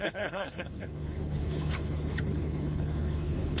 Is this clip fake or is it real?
fake